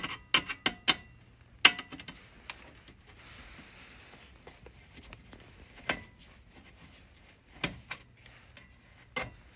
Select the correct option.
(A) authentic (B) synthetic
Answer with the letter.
A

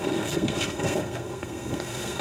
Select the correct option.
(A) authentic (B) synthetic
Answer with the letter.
B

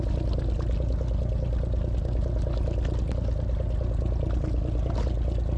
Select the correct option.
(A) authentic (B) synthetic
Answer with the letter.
A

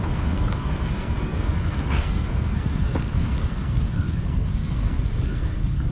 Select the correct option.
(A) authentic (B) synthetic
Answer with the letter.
B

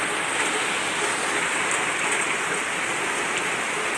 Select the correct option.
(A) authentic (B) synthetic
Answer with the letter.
A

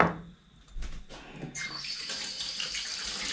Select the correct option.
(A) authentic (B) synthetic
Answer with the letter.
A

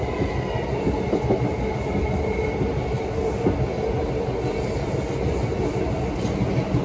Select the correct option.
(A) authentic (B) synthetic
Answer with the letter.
A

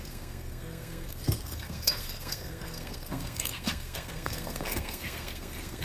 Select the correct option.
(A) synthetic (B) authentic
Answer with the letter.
A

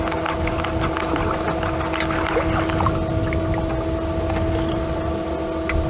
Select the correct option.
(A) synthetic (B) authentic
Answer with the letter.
B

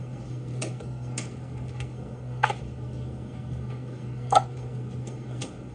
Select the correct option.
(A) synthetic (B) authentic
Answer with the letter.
A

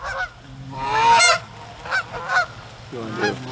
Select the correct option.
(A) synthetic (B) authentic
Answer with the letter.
B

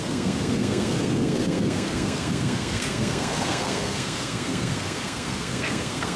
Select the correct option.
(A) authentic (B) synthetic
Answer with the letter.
B